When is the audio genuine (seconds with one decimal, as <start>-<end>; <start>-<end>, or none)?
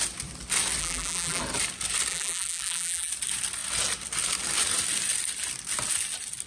0.0-0.8; 1.4-2.1; 3.1-6.5